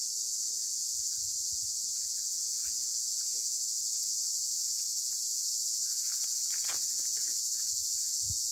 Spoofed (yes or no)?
yes